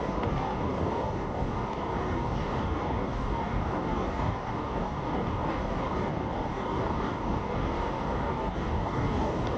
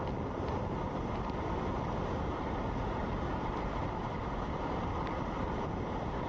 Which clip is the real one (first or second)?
second